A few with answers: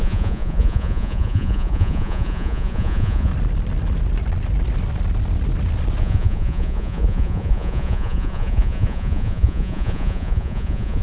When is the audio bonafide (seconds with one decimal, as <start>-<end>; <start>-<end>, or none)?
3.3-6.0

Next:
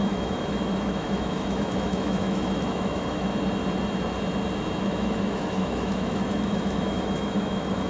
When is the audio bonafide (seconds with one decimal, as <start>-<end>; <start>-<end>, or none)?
3.3-4.8

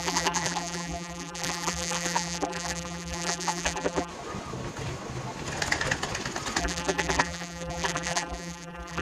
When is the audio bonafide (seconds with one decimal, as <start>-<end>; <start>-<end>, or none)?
4.1-6.6

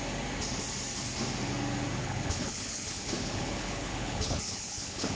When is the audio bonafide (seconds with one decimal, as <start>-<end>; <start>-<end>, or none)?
0.0-2.0